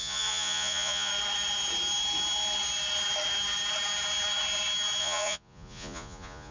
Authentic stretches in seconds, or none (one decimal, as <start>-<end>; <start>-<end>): 1.1-5.0